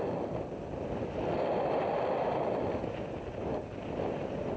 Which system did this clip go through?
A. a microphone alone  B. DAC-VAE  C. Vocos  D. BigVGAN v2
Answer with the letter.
A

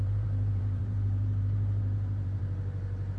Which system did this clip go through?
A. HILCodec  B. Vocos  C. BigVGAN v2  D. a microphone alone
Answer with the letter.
C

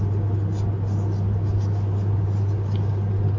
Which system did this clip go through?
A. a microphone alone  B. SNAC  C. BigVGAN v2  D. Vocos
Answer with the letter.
A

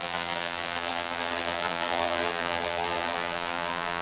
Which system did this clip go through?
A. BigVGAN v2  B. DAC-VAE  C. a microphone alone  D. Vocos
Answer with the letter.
A